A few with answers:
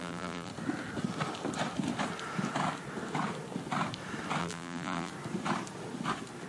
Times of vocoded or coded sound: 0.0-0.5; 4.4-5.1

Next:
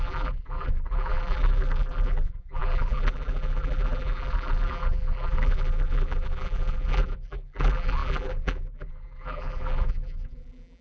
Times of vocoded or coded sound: 0.0-10.8

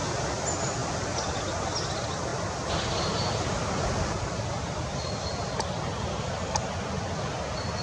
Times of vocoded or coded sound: 0.8-1.4

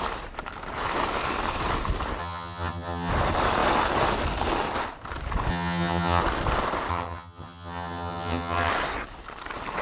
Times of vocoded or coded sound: 2.2-3.1; 5.5-6.2; 6.9-8.7

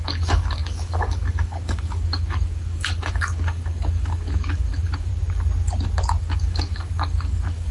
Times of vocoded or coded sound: 0.0-5.1; 6.2-7.7